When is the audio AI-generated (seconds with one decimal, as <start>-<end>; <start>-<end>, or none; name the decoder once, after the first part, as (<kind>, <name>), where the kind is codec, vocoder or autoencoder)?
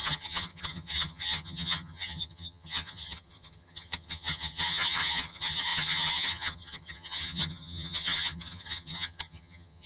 0.0-9.9 (vocoder, HiFi-GAN)